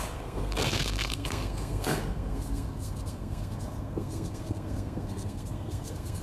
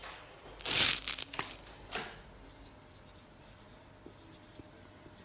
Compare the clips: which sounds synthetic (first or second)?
first